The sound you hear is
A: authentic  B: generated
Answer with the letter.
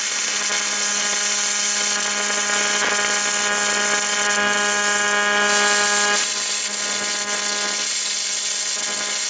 A